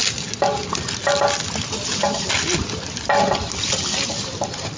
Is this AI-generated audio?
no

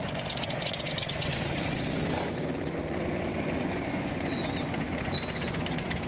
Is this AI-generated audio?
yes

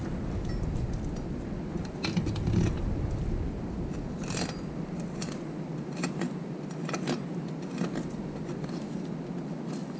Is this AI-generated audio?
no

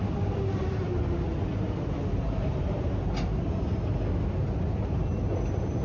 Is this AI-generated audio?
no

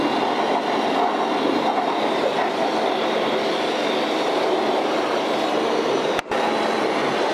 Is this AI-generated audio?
no